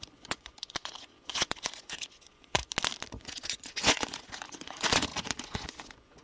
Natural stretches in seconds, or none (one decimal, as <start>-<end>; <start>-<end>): 2.6-3.2